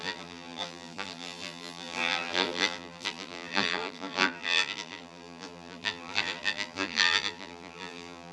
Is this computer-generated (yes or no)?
yes